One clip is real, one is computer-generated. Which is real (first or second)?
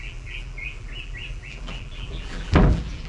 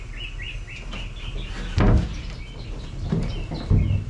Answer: second